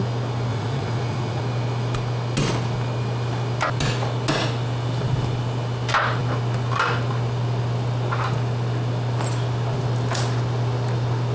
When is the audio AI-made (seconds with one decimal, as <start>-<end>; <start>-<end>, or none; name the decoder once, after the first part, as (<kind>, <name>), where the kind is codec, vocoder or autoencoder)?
0.5-1.4 (vocoder, Vocos)